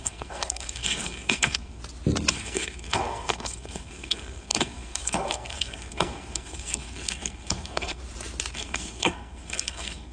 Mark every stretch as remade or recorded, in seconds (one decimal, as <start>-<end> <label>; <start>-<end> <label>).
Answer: 0.0-1.8 remade; 1.8-2.3 recorded; 2.3-8.0 remade; 8.0-8.5 recorded; 8.5-10.1 remade